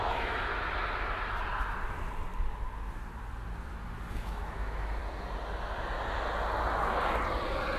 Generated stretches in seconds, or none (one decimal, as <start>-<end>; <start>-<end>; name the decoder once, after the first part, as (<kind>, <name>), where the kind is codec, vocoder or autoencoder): 0.0-0.5 (autoencoder, DAC-VAE); 4.1-5.0